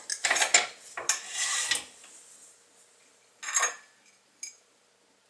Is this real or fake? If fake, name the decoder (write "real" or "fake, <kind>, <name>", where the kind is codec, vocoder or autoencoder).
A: real